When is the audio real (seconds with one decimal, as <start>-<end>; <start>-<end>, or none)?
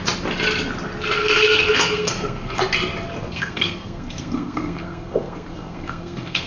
0.0-1.2; 2.6-3.3